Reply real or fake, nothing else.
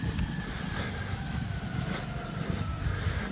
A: real